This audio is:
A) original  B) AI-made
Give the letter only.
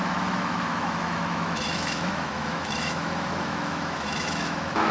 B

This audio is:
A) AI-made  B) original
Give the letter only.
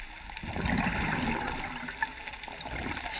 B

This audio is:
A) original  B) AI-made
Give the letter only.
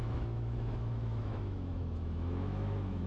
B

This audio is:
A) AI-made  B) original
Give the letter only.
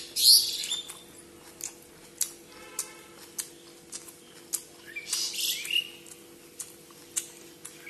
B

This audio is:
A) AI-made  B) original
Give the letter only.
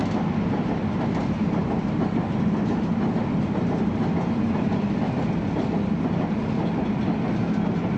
B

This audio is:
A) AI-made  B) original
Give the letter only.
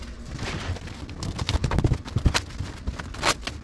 B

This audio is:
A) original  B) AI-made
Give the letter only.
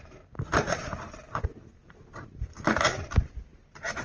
A